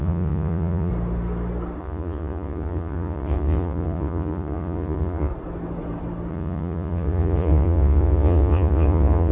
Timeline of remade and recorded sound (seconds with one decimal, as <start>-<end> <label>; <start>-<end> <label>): 0.0-0.9 remade; 0.9-1.8 recorded; 1.8-5.3 remade; 5.3-6.3 recorded; 6.3-9.3 remade